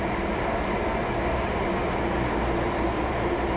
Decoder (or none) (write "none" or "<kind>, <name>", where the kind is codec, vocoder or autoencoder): none